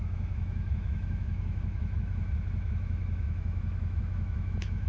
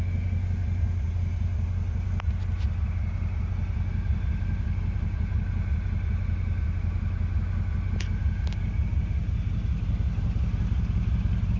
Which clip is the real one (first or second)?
second